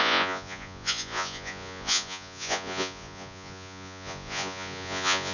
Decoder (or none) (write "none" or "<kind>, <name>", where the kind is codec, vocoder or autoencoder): vocoder, Vocos